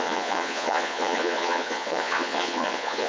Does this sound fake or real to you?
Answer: fake